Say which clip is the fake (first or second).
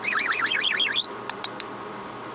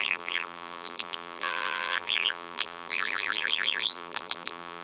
second